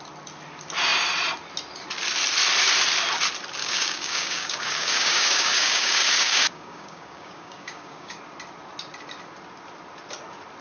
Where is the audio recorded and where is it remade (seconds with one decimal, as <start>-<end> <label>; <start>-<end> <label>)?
0.0-3.6 recorded; 3.6-8.2 remade; 8.2-10.6 recorded